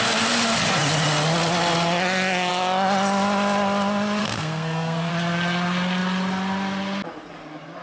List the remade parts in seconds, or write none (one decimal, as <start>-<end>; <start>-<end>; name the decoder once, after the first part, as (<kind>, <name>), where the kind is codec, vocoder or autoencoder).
4.2-5.1 (codec, SNAC)